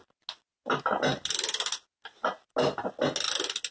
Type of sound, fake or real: real